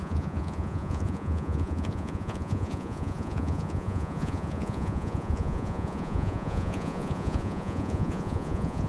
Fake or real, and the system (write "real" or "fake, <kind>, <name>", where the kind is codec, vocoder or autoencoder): fake, vocoder, Vocos